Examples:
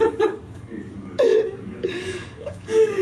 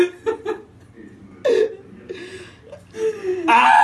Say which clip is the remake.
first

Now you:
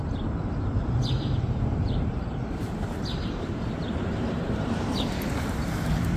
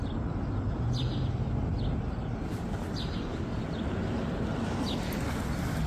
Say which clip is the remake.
first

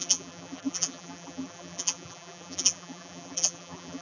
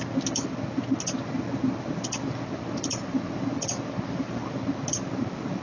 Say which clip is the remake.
first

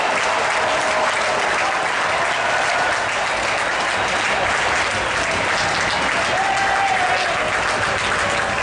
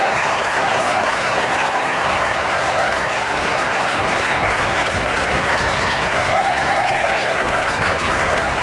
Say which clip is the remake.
second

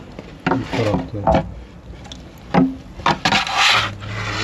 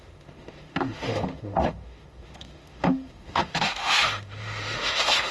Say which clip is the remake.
second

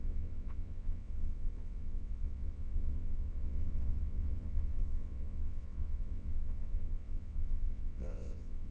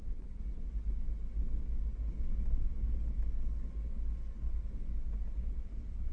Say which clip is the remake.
first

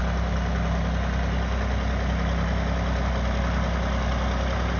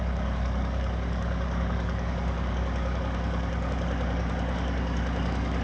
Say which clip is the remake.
second